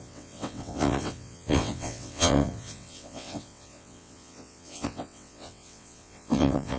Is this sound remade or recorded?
remade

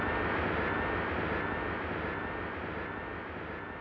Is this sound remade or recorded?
recorded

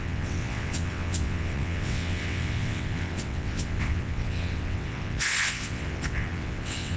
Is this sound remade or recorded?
remade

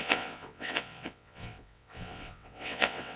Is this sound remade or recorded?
remade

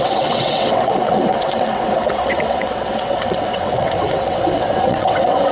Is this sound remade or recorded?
remade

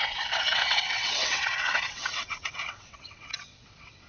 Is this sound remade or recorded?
remade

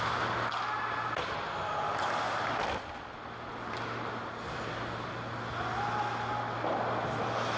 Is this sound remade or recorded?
recorded